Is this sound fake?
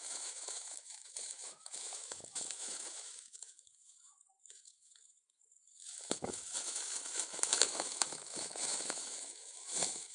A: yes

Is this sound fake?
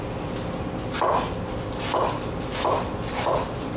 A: no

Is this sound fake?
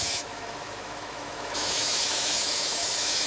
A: yes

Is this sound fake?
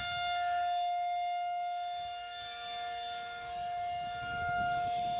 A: yes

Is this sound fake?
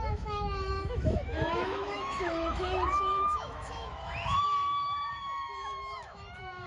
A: yes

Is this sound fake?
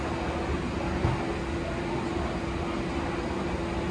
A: no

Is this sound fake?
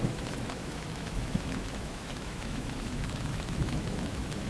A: yes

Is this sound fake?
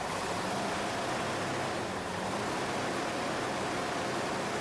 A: no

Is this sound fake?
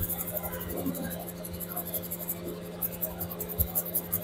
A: no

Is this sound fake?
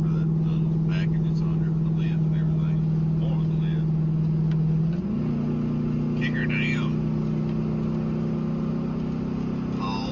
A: no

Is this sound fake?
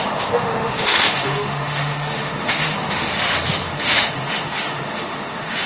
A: yes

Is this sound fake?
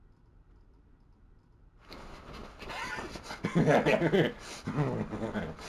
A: no